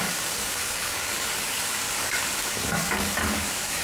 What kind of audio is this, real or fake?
fake